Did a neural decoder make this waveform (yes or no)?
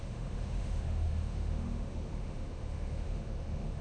yes